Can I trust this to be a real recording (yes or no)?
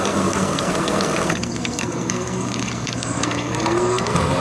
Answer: no